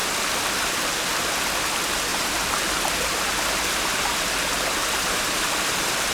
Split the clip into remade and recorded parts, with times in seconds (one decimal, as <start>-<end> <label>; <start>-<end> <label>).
0.0-2.1 recorded; 2.1-4.0 remade; 4.0-4.8 recorded; 4.8-6.1 remade